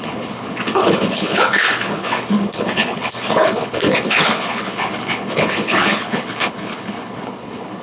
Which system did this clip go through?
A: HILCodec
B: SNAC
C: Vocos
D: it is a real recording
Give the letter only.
A